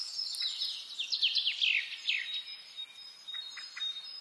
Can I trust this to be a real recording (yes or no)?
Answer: yes